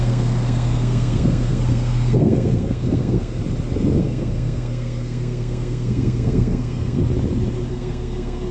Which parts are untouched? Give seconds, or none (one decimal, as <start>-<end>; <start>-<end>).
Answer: 3.4-4.0; 7.0-7.7